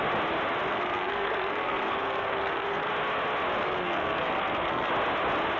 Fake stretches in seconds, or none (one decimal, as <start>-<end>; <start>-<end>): 0.7-2.9; 3.6-4.9